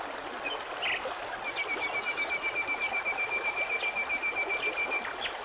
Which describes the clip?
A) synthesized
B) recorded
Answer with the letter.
B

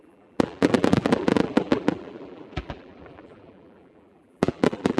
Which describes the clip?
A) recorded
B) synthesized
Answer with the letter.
B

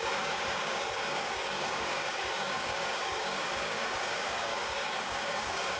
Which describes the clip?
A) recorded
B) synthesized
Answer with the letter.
B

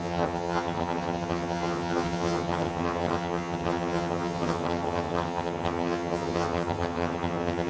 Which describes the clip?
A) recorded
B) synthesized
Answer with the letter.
B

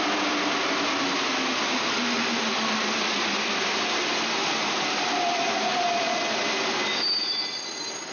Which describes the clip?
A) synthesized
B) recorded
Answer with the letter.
B